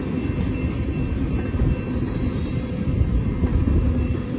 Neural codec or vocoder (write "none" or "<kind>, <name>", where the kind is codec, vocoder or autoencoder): none